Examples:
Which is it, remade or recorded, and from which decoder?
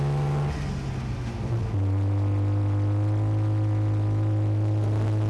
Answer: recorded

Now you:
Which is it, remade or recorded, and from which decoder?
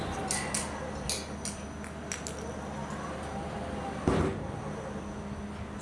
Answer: recorded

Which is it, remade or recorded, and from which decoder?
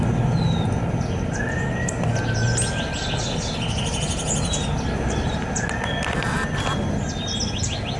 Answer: recorded